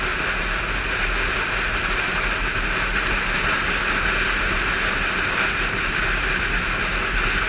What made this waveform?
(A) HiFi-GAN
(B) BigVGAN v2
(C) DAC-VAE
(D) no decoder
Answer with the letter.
D